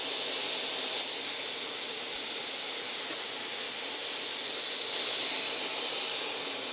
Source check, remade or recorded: recorded